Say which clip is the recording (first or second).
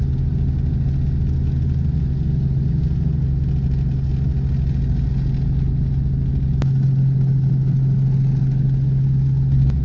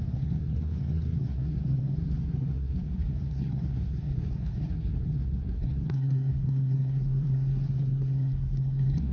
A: first